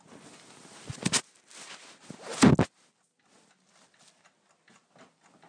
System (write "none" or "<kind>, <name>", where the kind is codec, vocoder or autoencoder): none